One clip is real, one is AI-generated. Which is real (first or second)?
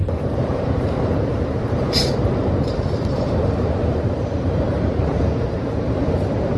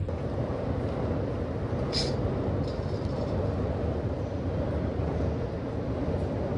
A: second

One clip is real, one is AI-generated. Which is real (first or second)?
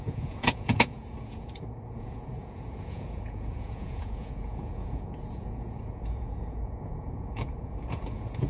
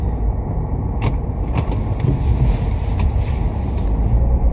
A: second